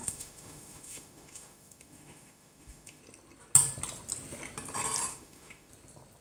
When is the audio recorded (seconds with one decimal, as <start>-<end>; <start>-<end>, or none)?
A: 3.0-5.1; 5.7-6.2